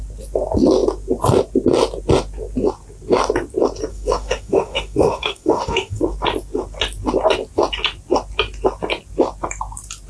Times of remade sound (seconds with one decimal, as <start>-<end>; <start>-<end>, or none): 3.9-6.0